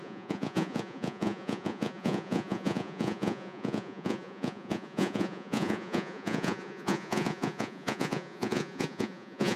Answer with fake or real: fake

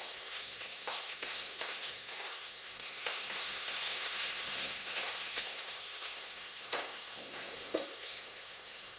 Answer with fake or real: fake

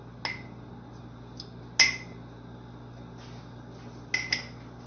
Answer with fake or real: real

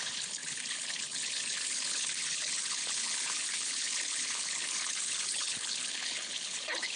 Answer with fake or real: fake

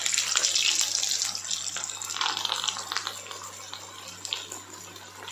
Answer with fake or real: real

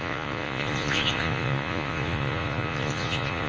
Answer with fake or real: fake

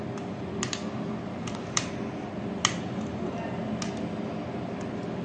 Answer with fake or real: real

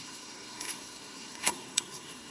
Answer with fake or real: fake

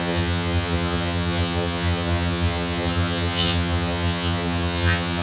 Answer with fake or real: fake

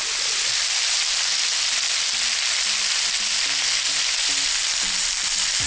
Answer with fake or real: real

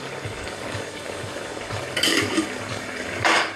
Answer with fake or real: fake